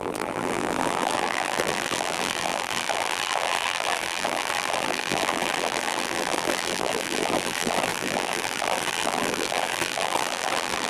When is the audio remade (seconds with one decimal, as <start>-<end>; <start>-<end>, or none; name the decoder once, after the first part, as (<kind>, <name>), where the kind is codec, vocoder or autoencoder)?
0.0-10.9 (vocoder, BigVGAN v2)